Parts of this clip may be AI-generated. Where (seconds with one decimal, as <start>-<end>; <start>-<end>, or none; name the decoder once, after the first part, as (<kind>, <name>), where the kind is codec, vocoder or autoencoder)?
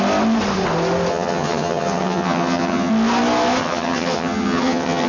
1.1-2.9 (vocoder, HiFi-GAN); 3.6-5.1